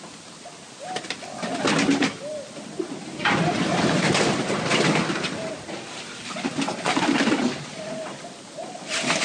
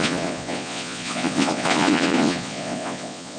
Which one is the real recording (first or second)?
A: first